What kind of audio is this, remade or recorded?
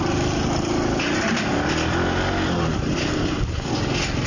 recorded